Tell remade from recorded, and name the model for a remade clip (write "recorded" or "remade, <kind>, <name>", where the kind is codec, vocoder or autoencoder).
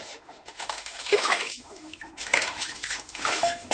remade, autoencoder, DAC-VAE